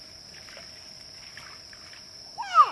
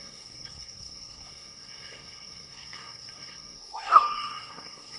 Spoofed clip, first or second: second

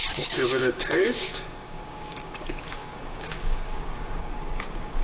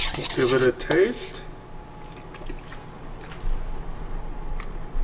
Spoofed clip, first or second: first